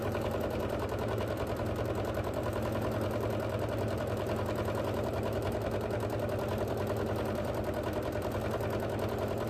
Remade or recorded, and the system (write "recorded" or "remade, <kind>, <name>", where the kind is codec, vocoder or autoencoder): recorded